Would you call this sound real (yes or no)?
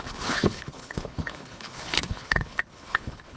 no